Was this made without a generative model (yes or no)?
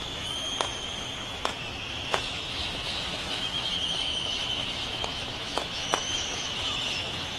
no